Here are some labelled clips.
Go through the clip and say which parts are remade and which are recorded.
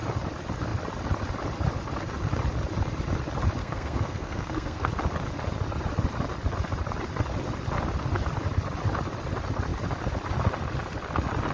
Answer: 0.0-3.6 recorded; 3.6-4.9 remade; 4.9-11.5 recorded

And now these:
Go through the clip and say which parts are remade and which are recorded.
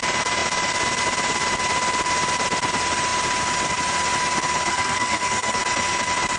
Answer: 0.0-4.7 recorded; 4.7-5.6 remade; 5.6-6.4 recorded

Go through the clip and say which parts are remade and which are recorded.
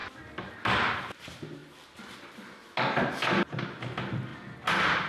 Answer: 0.0-5.1 recorded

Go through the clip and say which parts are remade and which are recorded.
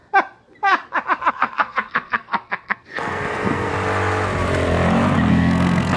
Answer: 0.0-1.3 recorded; 1.3-3.7 remade; 3.7-5.3 recorded; 5.3-6.0 remade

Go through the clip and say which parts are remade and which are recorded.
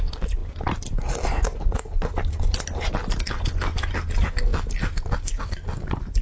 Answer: 0.0-6.2 recorded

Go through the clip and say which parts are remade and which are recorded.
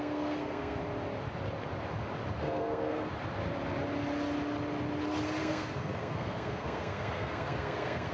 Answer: 0.0-0.8 remade; 0.8-2.4 recorded; 2.4-3.1 remade; 3.1-5.4 recorded; 5.4-8.1 remade